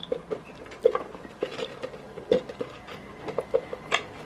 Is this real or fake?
real